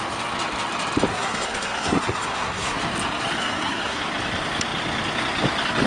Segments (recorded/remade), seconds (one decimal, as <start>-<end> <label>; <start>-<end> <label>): 0.0-1.1 recorded; 1.1-2.8 remade; 2.8-3.4 recorded; 3.4-4.0 remade; 4.0-5.9 recorded